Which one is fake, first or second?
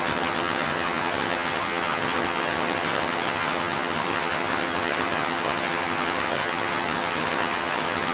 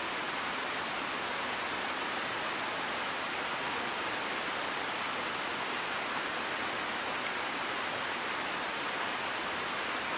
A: first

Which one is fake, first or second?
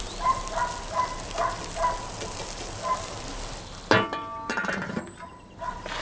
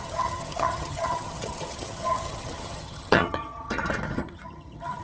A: second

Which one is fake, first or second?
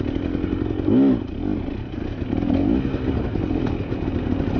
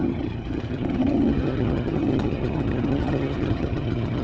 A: second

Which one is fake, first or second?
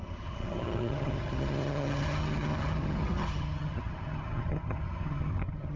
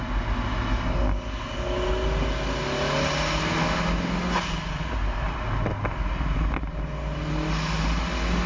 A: first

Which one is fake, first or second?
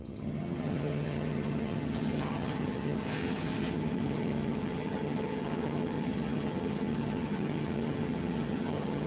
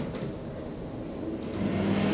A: first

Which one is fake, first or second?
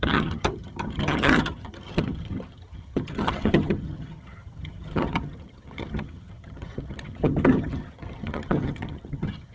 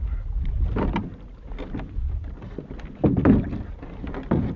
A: first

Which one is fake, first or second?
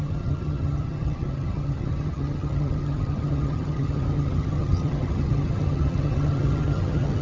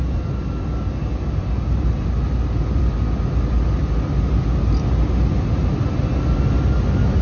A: first